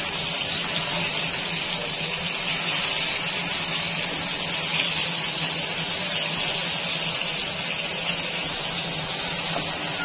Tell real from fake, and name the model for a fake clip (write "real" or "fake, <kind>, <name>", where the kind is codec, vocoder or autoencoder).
real